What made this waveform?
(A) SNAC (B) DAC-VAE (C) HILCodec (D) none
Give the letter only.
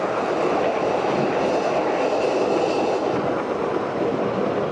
D